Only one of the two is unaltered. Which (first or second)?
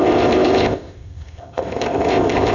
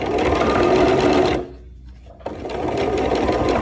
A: second